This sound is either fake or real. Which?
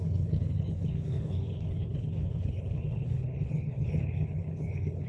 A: fake